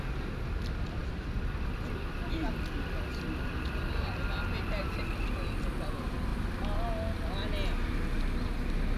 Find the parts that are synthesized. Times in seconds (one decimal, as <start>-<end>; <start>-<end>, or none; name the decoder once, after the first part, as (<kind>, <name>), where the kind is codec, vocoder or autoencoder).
none